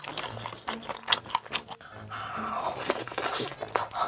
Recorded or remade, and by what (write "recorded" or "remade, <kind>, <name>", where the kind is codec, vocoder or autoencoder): recorded